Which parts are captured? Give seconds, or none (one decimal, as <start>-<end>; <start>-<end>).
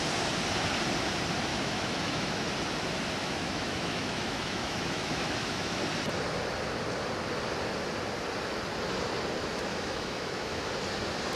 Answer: 0.0-1.5; 2.5-3.2; 5.8-9.7; 10.7-11.4